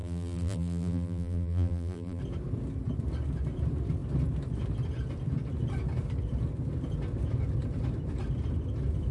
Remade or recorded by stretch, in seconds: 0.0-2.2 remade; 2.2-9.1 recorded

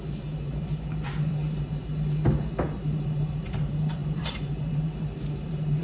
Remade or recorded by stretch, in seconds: 0.0-1.4 remade; 1.4-2.6 recorded; 2.6-5.8 remade

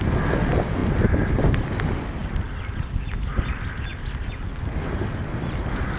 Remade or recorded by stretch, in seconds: 0.0-6.0 recorded

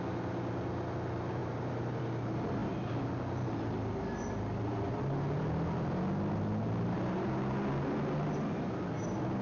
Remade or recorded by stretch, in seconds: 0.0-1.4 recorded; 1.4-2.0 remade; 2.0-9.4 recorded

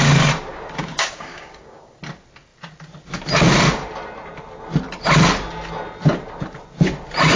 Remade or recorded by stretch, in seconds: 0.0-0.5 recorded; 0.5-2.0 remade; 2.0-7.4 recorded